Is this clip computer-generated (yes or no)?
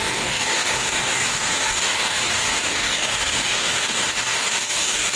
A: yes